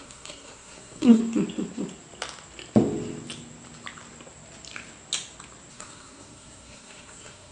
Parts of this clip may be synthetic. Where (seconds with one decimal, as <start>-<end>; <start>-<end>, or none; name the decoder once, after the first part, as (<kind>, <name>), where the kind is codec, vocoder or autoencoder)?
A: 0.0-1.2 (codec, SNAC); 5.7-7.5